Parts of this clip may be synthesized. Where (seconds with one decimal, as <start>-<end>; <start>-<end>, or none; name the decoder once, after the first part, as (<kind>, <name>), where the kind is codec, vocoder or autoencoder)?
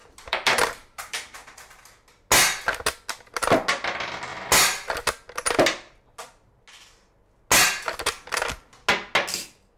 0.0-1.8 (vocoder, BigVGAN v2)